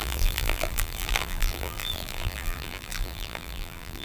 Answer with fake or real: fake